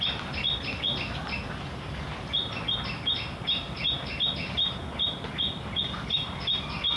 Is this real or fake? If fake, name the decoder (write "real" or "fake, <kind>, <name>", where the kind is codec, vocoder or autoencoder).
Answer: real